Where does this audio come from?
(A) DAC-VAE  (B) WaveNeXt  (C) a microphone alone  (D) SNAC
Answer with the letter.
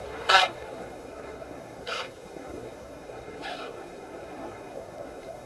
D